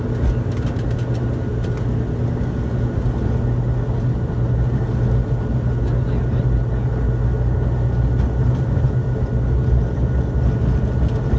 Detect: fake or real real